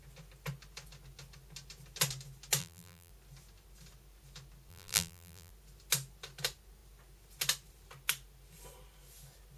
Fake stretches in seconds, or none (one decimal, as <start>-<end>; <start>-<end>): 2.6-3.1; 4.7-5.5